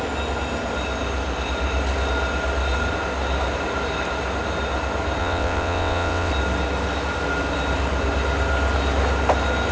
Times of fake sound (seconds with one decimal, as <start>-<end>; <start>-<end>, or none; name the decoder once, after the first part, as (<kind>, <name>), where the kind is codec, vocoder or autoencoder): 5.2-6.3 (vocoder, WaveNeXt)